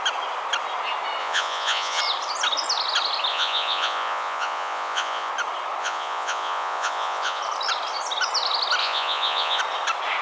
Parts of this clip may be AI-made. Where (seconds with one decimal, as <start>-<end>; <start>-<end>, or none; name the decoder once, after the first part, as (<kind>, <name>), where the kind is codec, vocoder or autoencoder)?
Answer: 1.2-2.0 (vocoder, Vocos); 3.3-5.3; 5.8-7.4; 8.8-9.6